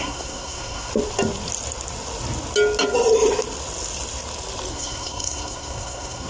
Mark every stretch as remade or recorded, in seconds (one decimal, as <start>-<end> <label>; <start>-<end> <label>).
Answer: 0.0-0.9 remade; 0.9-4.7 recorded; 4.7-6.3 remade